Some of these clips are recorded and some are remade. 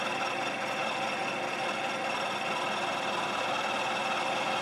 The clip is recorded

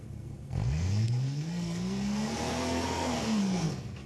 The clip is remade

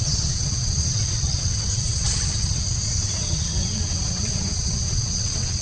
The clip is remade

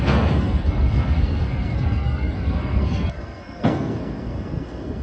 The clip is remade